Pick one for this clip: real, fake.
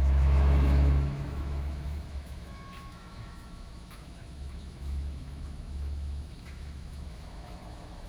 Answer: fake